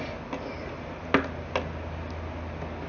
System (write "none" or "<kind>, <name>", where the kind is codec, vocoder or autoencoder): none